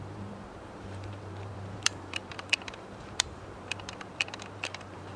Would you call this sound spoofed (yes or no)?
yes